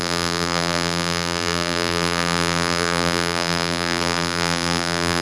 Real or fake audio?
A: fake